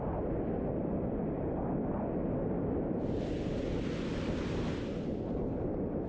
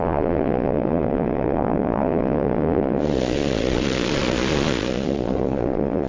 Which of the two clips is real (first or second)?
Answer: first